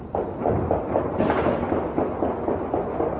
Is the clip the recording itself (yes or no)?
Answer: yes